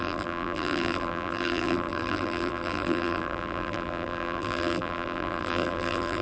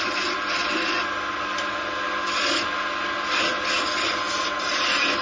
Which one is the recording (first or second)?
second